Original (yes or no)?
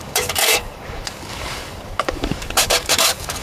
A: no